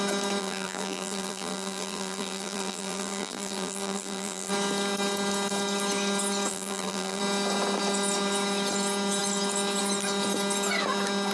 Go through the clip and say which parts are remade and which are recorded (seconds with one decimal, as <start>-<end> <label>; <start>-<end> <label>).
0.0-0.4 recorded; 0.4-4.5 remade; 4.5-6.5 recorded; 6.5-7.2 remade; 7.2-11.3 recorded